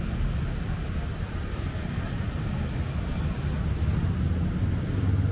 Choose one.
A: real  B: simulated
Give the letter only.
B